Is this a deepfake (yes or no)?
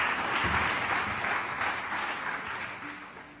no